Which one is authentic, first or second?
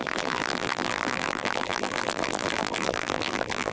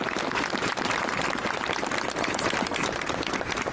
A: second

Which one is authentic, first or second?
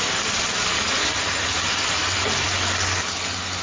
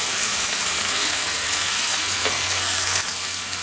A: first